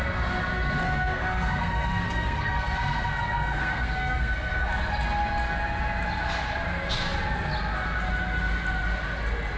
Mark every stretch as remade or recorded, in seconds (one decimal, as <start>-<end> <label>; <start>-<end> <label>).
0.0-0.8 recorded; 0.8-4.7 remade; 4.7-9.6 recorded